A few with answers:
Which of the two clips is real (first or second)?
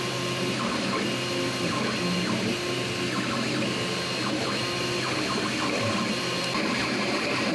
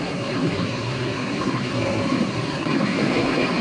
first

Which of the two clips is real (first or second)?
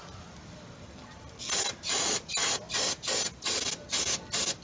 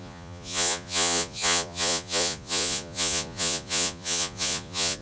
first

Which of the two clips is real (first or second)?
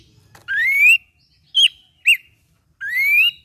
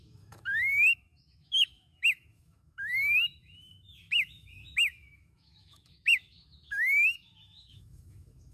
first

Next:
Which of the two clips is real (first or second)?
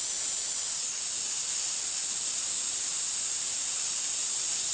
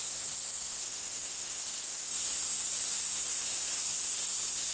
first